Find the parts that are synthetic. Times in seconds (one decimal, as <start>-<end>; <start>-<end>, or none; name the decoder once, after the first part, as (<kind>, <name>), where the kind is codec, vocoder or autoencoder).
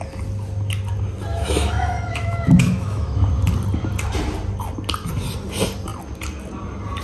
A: 1.3-3.3 (autoencoder, DAC-VAE)